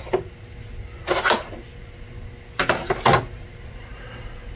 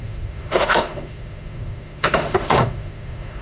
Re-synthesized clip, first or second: second